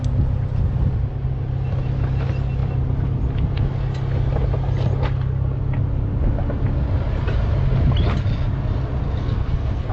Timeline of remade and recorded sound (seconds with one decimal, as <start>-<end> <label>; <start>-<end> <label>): 0.0-9.2 recorded; 9.2-9.9 remade